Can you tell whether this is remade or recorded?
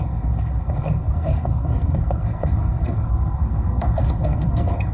remade